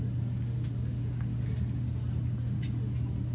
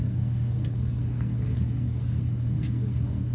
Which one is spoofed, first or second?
second